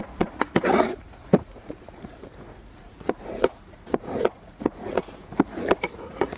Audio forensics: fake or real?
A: fake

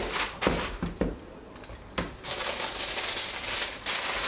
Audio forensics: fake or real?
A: real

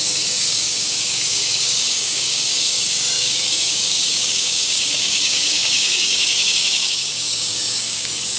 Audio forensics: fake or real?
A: fake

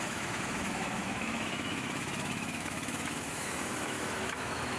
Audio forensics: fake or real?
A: fake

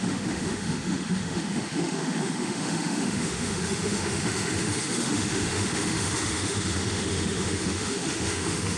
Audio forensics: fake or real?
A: fake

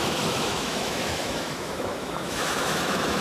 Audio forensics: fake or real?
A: fake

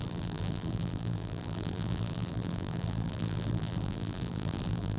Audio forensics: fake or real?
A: fake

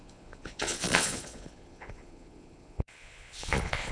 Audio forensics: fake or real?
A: fake